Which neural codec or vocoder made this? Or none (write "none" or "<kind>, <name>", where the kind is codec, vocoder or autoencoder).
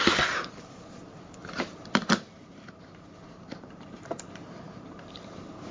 vocoder, BigVGAN v2